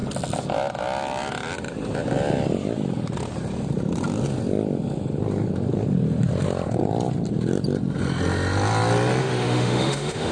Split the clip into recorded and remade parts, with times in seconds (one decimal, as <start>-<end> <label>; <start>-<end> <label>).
0.0-9.2 recorded; 9.2-10.3 remade